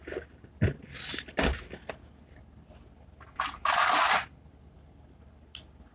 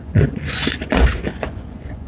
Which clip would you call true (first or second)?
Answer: first